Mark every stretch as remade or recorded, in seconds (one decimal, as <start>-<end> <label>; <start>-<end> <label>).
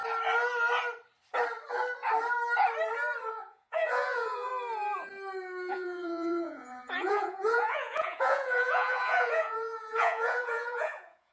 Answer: 0.0-3.3 recorded; 3.3-4.5 remade; 4.5-5.7 recorded; 5.7-11.3 remade